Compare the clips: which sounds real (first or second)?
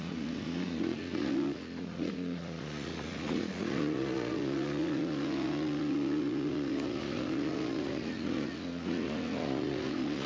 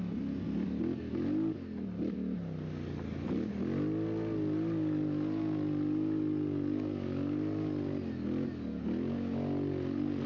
second